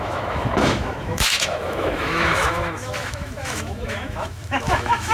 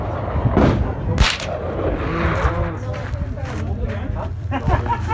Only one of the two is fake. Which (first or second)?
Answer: first